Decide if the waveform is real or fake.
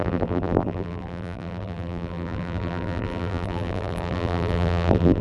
fake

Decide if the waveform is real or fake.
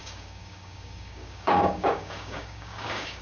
fake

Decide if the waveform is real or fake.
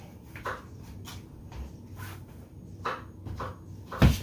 real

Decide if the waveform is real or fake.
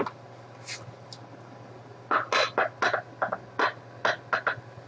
real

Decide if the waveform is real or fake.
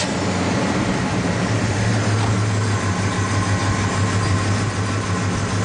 real